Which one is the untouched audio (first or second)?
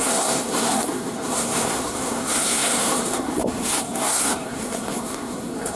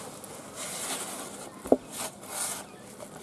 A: second